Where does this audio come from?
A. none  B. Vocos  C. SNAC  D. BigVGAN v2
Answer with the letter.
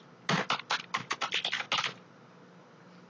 A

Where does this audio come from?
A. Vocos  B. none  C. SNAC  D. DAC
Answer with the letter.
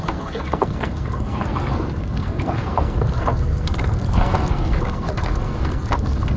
C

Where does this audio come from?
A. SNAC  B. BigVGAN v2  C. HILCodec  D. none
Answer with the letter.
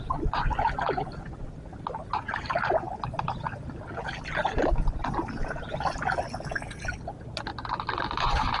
D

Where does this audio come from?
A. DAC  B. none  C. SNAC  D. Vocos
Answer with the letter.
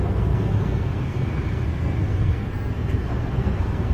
C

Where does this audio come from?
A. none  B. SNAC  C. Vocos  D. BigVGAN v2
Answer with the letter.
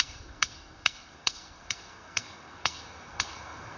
B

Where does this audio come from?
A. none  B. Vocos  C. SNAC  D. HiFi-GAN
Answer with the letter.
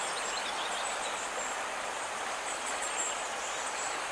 A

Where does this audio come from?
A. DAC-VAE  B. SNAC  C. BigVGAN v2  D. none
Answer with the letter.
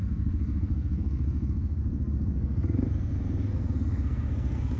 B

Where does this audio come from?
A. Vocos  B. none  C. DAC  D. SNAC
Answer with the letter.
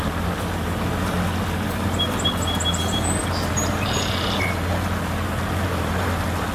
B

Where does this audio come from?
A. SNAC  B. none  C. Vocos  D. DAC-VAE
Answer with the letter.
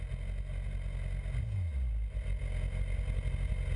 B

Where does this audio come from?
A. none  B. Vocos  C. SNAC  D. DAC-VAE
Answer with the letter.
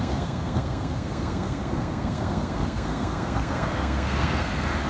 C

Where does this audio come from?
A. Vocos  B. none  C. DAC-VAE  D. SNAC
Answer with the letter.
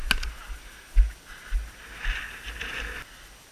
B